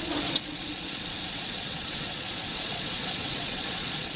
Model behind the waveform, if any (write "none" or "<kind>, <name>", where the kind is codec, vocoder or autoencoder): vocoder, Vocos